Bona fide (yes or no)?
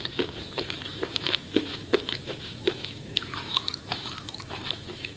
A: no